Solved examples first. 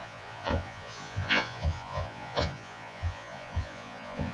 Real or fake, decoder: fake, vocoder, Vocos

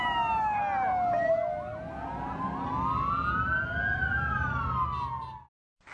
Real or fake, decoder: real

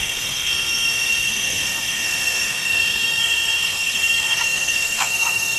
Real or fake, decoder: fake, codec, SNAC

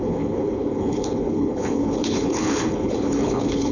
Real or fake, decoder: fake, codec, HILCodec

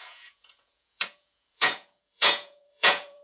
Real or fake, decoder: fake, vocoder, Vocos